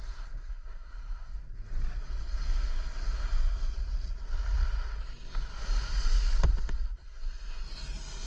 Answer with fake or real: real